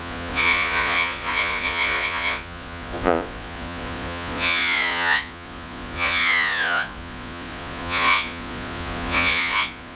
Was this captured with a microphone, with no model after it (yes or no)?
no